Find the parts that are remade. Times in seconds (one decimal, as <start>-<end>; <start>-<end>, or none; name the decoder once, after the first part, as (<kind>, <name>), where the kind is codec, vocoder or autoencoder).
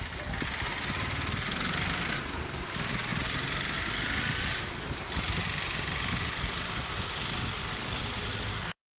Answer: 1.5-2.1 (codec, SNAC); 8.5-9.0